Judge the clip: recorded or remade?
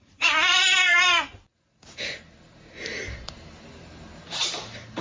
remade